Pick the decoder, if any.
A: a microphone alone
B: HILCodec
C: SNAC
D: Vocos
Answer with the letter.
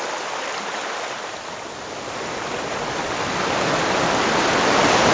A